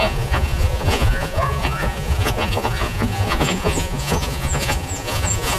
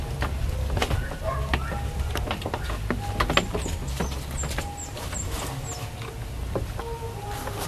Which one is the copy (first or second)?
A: first